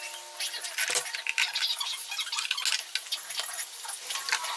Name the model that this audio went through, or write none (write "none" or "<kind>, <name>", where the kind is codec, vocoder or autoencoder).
none